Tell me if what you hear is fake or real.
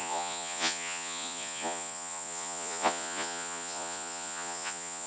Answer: fake